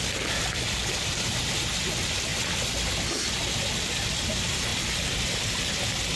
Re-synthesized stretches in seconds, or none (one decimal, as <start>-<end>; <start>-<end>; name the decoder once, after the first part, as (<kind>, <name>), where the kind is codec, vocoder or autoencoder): 0.0-2.3 (vocoder, BigVGAN v2); 3.9-6.2